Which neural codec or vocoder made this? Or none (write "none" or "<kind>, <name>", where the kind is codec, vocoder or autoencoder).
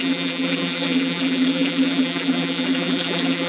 vocoder, BigVGAN v2